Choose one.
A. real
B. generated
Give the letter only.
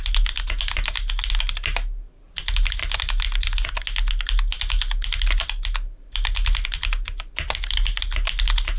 A